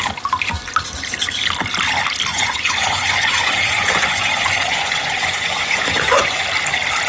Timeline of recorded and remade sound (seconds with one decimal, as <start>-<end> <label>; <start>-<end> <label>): 0.0-2.3 recorded; 2.3-6.4 remade; 6.4-7.1 recorded